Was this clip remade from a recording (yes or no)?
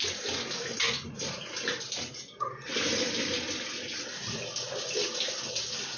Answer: no